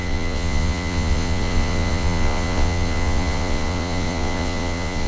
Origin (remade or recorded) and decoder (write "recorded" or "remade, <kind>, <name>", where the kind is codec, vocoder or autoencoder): remade, vocoder, Vocos